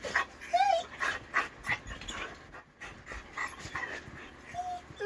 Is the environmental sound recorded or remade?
recorded